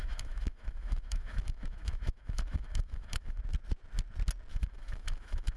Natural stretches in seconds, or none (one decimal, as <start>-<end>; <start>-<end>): 3.4-4.5